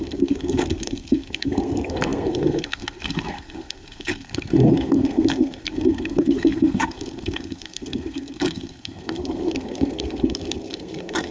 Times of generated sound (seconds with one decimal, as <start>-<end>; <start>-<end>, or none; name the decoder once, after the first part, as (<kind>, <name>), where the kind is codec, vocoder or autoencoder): 0.0-11.3 (codec, SNAC)